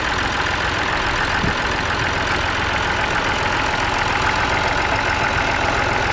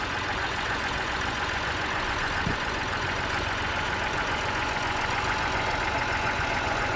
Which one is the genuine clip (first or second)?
first